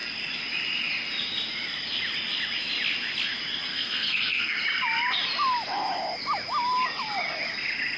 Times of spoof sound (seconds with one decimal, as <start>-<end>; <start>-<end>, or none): 3.7-4.6